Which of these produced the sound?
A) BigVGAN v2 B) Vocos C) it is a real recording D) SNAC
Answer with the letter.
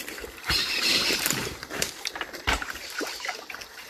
A